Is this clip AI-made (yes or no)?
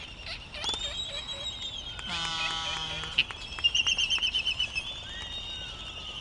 no